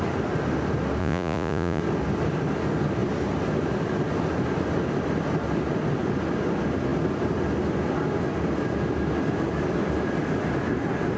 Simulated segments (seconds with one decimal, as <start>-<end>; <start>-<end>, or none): 1.0-1.8

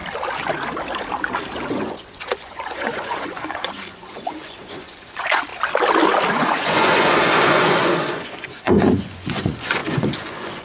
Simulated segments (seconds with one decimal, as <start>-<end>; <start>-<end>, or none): 1.7-5.5; 6.3-10.6

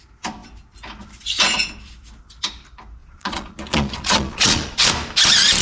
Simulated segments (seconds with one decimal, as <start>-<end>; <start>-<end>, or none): 3.0-4.9

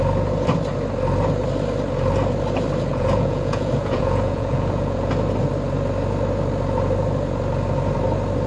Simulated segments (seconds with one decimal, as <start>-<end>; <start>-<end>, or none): 2.9-5.1

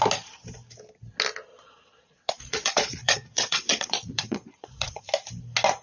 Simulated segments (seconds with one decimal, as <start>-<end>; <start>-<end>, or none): 1.5-5.0

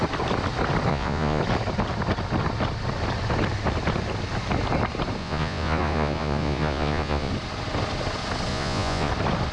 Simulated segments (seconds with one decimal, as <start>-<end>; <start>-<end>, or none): 0.9-1.4; 5.2-7.3; 8.5-9.1

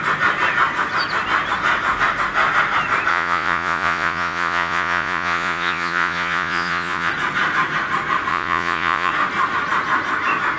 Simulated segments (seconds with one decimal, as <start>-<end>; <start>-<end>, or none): 3.1-7.1; 8.3-9.1